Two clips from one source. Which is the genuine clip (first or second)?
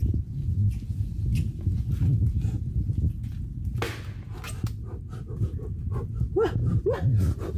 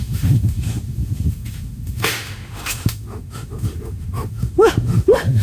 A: first